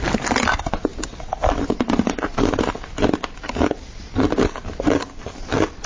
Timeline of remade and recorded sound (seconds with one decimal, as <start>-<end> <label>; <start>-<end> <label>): 0.0-5.9 recorded